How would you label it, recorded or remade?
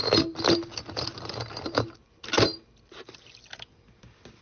recorded